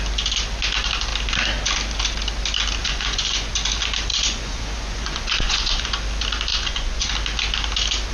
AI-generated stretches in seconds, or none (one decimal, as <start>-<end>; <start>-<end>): 2.8-3.5; 4.1-5.9; 6.5-7.1